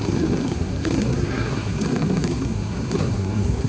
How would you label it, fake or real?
fake